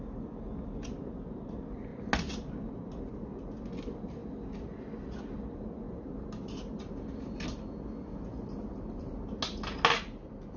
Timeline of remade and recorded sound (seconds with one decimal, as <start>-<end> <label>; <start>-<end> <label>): 0.0-10.6 recorded